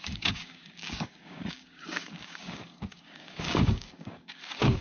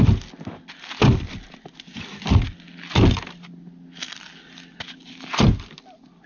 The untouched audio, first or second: second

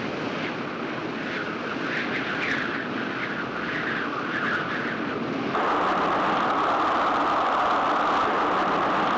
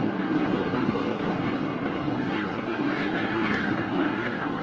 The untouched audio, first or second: first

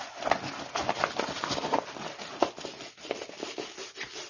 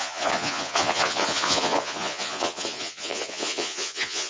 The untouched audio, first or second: first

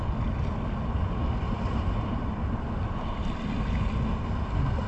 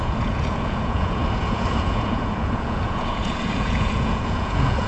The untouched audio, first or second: first